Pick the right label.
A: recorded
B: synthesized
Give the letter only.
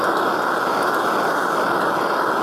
A